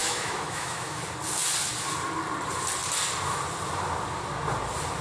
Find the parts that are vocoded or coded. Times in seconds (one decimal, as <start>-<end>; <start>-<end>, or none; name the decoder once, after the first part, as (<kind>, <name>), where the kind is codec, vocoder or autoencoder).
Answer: 0.0-1.0 (autoencoder, DAC-VAE)